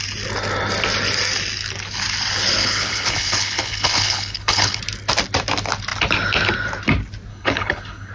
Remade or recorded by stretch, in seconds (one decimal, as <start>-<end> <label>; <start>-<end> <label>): 0.0-2.6 recorded; 2.6-4.8 remade; 4.8-7.3 recorded; 7.3-8.1 remade